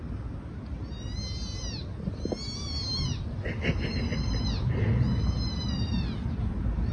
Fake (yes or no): no